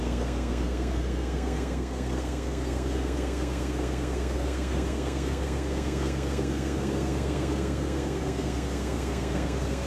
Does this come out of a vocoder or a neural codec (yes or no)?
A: yes